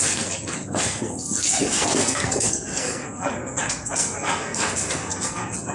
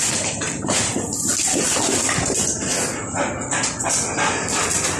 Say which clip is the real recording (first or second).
second